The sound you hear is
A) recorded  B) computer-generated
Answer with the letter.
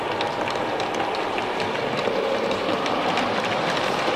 A